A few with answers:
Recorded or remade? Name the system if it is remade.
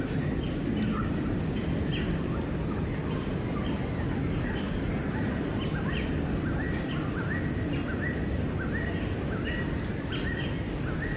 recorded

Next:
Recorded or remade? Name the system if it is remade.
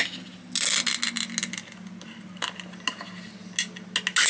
recorded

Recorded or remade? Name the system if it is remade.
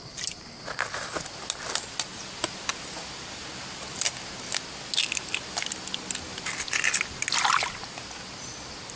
recorded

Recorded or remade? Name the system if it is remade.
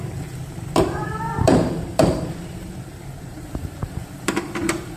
remade, vocoder, BigVGAN v2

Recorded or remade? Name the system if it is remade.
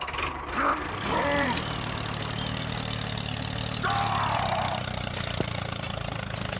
recorded